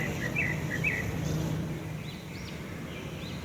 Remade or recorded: recorded